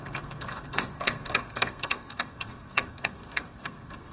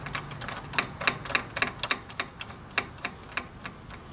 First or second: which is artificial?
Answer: first